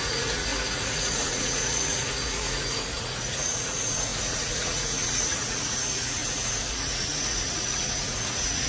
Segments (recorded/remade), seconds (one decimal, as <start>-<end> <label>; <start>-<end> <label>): 0.0-8.7 remade